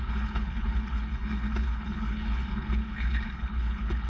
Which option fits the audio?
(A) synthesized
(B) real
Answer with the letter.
A